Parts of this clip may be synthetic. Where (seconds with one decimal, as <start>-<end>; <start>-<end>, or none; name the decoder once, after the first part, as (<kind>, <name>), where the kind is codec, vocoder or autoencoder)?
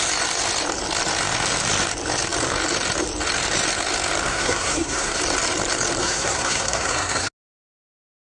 4.3-5.2 (codec, SNAC); 6.0-7.3